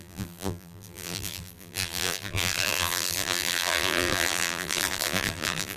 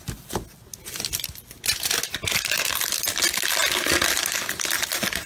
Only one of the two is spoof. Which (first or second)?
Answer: first